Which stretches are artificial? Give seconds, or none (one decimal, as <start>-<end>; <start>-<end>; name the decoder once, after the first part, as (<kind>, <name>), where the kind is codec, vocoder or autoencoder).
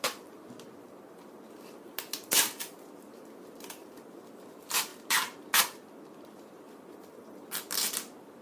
none